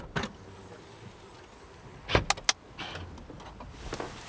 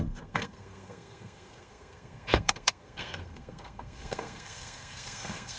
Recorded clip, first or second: first